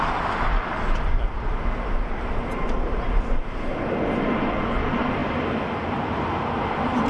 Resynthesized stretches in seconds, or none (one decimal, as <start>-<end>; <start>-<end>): 5.2-6.2